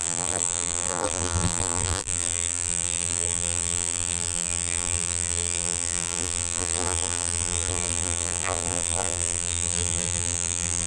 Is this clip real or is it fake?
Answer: fake